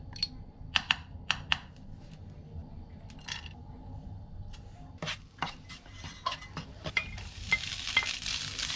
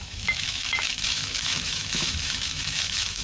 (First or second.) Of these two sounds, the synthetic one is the second